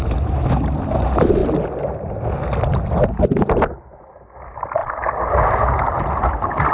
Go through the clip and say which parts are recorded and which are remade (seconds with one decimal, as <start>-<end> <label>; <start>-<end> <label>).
0.0-6.7 recorded